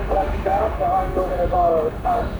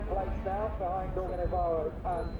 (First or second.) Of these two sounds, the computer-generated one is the first